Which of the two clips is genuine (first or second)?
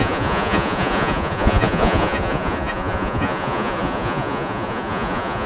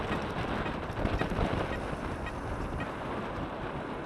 second